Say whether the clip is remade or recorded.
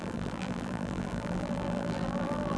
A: remade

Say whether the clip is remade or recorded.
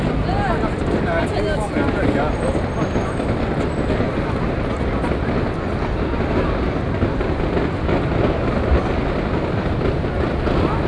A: recorded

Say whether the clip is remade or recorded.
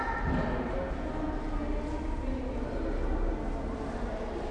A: recorded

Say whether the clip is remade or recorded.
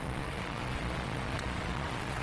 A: remade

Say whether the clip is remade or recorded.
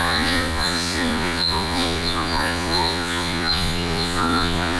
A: remade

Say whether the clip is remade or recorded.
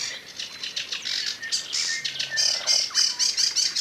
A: recorded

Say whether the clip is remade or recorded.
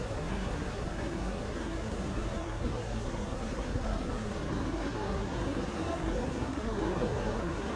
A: remade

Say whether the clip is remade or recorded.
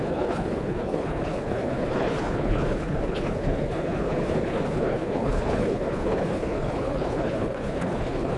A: remade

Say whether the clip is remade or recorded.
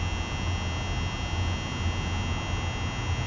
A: recorded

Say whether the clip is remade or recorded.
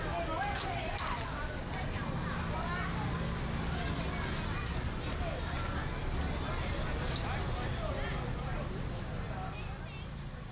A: recorded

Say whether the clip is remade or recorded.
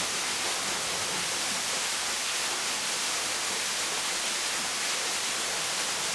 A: recorded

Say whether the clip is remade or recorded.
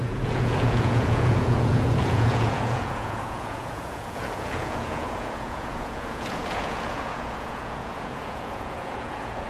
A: remade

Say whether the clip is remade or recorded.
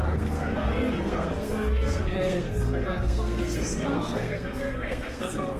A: remade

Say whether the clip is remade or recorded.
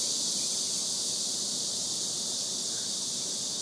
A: recorded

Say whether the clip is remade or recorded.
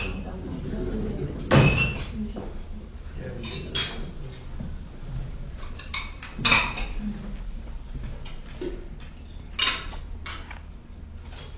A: recorded